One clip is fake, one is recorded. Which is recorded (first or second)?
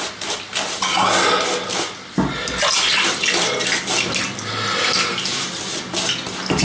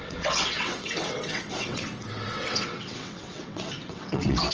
first